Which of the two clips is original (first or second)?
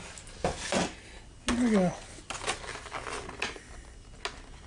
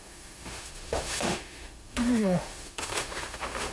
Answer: first